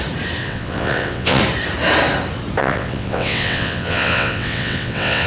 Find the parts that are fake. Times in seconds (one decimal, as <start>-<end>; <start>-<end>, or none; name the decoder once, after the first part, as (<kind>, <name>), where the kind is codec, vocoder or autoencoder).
0.4-1.4 (vocoder, WaveNeXt); 2.6-5.3